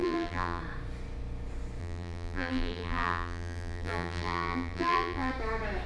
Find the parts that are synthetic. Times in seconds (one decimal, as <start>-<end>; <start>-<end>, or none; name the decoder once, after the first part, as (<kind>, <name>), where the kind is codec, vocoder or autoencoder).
0.0-0.6 (vocoder, BigVGAN v2); 1.8-5.3